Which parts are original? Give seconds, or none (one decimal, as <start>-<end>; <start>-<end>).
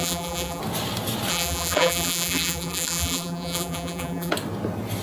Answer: 0.6-1.3; 4.3-5.0